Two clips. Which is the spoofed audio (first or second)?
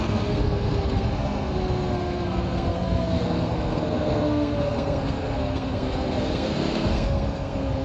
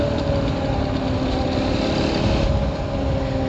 first